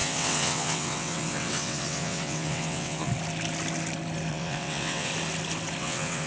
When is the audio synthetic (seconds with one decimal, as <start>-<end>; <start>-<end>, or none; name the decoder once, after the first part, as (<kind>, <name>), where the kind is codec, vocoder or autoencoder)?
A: 0.0-3.1 (vocoder, WaveNeXt); 4.3-5.1; 5.8-6.3